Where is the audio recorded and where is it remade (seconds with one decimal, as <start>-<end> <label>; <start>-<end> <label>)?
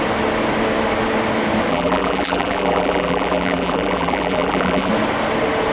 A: 0.0-1.7 recorded; 1.7-4.9 remade; 4.9-5.7 recorded